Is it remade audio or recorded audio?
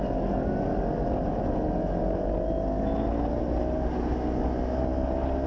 recorded